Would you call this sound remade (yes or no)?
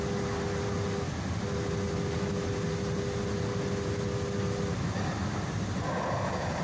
no